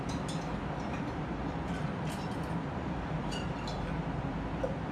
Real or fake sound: fake